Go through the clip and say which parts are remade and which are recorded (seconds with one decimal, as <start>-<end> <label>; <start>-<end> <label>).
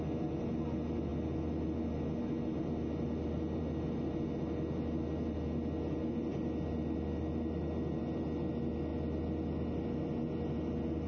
0.0-11.1 recorded